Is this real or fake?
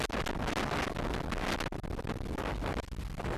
real